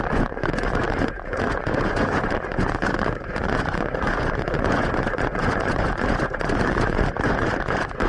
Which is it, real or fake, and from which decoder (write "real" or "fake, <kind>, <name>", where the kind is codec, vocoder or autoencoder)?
fake, vocoder, Vocos